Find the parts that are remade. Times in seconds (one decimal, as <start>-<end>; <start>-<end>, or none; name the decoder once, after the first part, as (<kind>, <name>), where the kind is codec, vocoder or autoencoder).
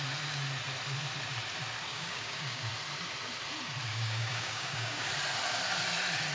1.9-2.7 (codec, DAC); 3.9-5.1